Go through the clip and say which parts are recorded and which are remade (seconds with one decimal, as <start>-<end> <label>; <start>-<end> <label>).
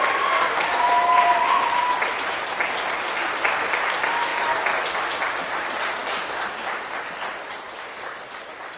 0.0-4.3 remade; 4.3-5.1 recorded; 5.1-6.0 remade; 6.0-7.4 recorded; 7.4-8.8 remade